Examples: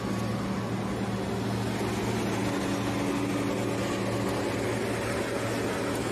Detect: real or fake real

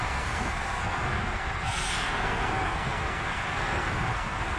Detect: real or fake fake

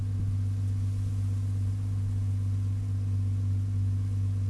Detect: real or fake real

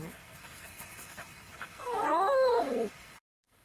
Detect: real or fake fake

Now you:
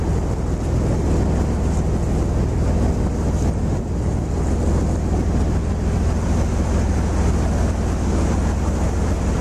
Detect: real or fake real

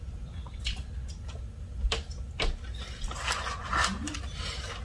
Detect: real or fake real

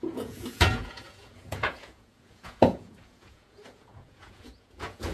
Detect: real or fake fake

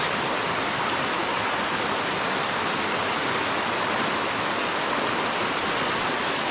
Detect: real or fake real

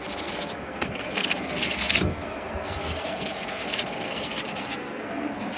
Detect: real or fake fake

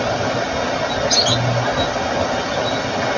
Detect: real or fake real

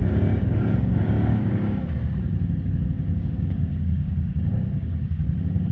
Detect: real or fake fake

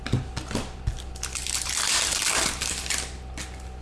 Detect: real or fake real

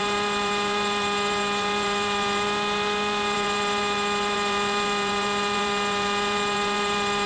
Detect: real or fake fake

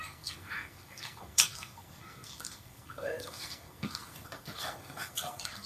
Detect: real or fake fake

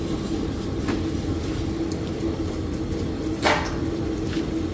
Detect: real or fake real